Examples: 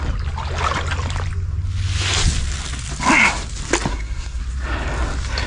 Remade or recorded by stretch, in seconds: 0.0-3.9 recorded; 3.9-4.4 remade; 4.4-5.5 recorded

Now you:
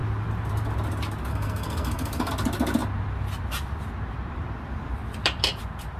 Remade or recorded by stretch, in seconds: 0.0-1.3 recorded; 1.3-2.3 remade; 2.3-6.0 recorded

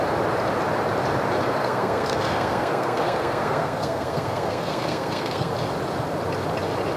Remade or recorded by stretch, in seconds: 0.0-1.6 recorded; 1.6-5.5 remade; 5.5-7.0 recorded

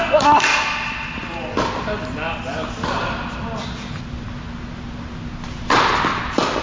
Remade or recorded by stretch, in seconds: 0.0-6.6 recorded

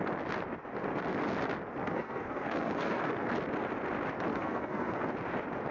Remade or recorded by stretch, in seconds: 0.0-1.8 recorded; 1.8-3.3 remade; 3.3-4.3 recorded; 4.3-5.0 remade; 5.0-5.7 recorded

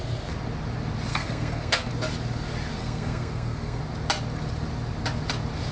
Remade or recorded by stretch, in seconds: 0.0-1.1 recorded; 1.1-1.9 remade; 1.9-2.8 recorded; 2.8-3.8 remade; 3.8-5.7 recorded

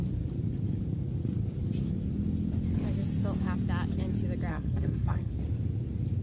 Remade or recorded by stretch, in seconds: 0.0-4.5 recorded; 4.5-5.3 remade; 5.3-6.2 recorded